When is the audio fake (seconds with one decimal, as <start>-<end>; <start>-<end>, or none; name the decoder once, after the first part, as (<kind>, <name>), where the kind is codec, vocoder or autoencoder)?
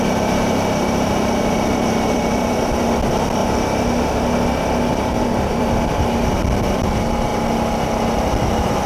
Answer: 0.0-3.4 (vocoder, BigVGAN v2); 4.9-7.3; 8.5-8.9